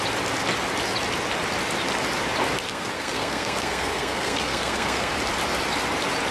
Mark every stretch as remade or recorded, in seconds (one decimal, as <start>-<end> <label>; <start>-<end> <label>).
0.0-2.7 recorded; 2.7-5.1 remade; 5.1-6.3 recorded